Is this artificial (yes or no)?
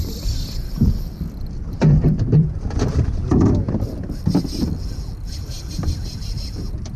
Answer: yes